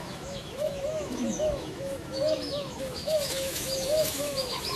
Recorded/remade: remade